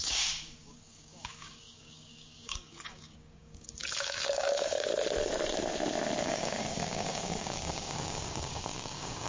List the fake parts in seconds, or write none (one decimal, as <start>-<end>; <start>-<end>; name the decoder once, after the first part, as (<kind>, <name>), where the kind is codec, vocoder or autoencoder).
0.0-4.9 (codec, DAC); 6.2-9.3